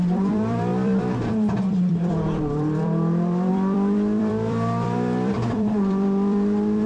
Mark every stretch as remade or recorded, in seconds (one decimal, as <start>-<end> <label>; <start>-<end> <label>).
0.0-6.9 remade